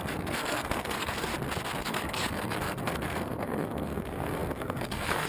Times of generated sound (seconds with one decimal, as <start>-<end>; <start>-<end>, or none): 0.0-1.3; 1.8-5.3